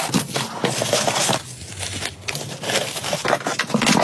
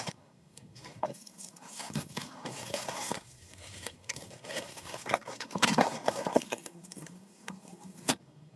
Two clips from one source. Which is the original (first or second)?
first